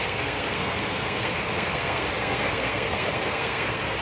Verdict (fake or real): fake